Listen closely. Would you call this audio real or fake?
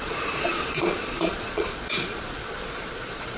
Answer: fake